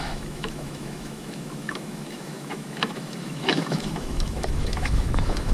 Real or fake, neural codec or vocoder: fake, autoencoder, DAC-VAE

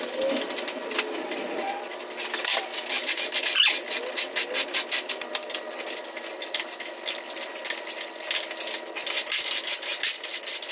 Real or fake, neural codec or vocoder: real